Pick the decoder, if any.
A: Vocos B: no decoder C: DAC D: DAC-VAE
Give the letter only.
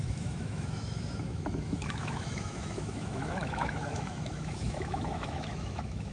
D